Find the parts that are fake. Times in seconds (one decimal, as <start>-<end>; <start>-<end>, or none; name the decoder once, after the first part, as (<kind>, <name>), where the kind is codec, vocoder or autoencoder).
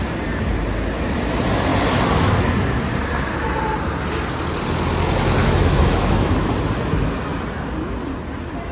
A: 5.4-6.5 (autoencoder, DAC-VAE)